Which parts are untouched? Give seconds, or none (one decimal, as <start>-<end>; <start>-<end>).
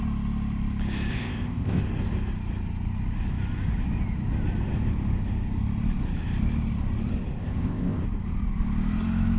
0.0-1.1; 1.8-7.4; 8.0-9.4